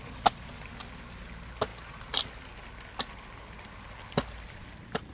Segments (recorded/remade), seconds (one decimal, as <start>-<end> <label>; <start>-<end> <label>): 0.0-5.1 recorded